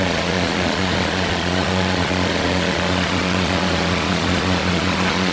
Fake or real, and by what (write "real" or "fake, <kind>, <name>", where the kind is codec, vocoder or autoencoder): fake, vocoder, Vocos